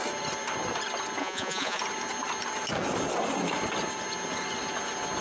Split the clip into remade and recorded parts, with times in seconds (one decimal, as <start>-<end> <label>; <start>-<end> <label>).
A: 0.0-1.2 recorded; 1.2-1.8 remade; 1.8-5.2 recorded